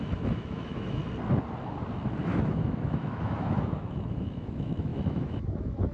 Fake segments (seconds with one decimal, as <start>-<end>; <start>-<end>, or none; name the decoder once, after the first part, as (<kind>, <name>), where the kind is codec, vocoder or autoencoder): 0.0-1.0 (autoencoder, DAC-VAE); 2.2-5.9